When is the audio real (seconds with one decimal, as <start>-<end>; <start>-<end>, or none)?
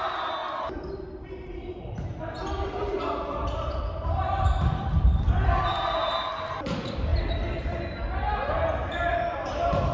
7.1-8.7